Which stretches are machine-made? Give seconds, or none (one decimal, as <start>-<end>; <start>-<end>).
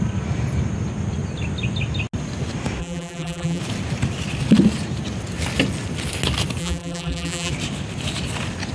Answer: 2.8-3.6; 6.6-7.5